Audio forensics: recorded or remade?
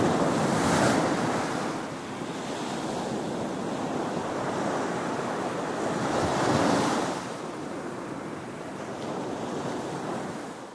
recorded